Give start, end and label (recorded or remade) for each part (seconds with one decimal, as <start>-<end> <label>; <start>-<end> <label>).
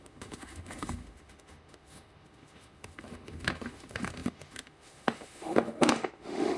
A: 0.0-6.6 remade